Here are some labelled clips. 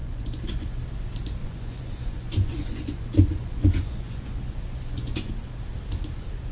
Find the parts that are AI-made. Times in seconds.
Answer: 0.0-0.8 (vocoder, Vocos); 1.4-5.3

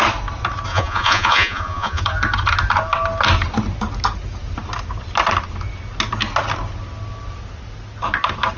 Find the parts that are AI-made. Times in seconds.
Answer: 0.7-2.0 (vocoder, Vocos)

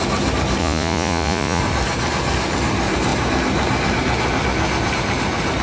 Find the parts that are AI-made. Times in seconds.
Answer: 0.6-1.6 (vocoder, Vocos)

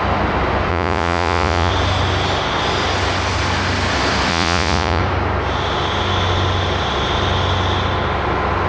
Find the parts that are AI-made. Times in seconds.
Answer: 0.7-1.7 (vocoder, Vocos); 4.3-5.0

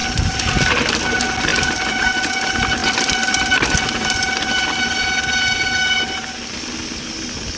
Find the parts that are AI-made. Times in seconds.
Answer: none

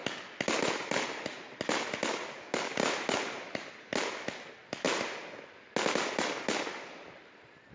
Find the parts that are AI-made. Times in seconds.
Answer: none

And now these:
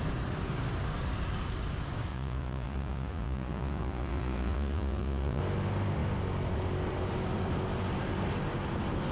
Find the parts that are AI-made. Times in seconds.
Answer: 2.1-5.4 (vocoder, Vocos)

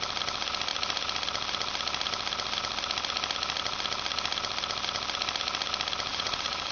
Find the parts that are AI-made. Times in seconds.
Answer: 6.1-6.7 (vocoder, Vocos)